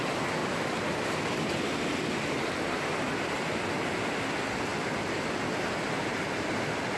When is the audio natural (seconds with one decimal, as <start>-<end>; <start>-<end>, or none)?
0.0-7.0